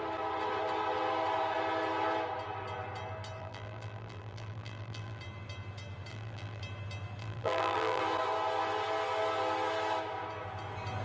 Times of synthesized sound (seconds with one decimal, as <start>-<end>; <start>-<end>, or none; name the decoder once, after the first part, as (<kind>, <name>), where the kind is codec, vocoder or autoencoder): 3.4-5.2 (vocoder, BigVGAN v2); 6.1-6.6; 7.2-8.0